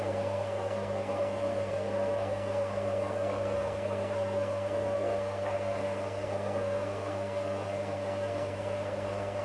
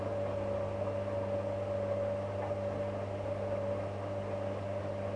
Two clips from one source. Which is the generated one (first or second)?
first